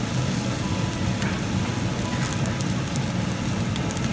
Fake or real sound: real